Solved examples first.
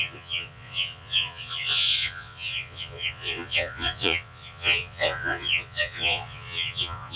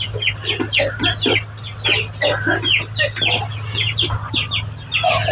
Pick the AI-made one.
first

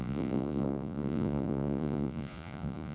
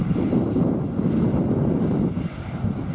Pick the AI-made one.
first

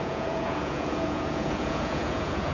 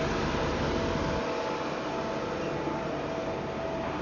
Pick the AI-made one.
first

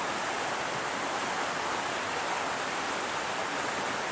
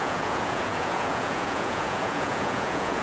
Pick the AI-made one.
second